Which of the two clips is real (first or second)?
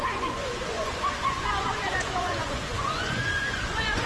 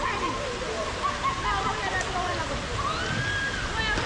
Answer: second